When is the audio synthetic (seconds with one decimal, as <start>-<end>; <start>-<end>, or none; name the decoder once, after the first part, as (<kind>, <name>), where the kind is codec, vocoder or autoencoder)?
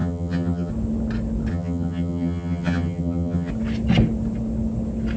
0.0-0.7 (vocoder, HiFi-GAN); 1.5-3.5